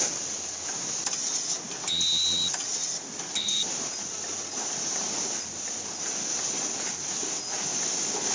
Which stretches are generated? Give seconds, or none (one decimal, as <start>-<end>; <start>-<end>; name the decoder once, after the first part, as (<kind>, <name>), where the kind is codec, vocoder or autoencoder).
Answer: 2.7-5.8 (vocoder, BigVGAN v2)